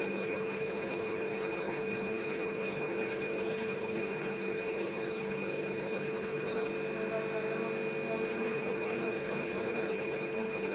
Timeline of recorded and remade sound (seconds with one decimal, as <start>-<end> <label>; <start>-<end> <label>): 0.0-6.7 remade; 6.7-8.3 recorded; 8.3-10.7 remade